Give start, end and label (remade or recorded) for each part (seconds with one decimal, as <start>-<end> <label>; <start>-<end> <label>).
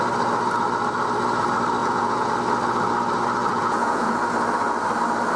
0.0-1.8 recorded; 1.8-2.3 remade; 2.3-3.4 recorded; 3.4-4.2 remade; 4.2-5.4 recorded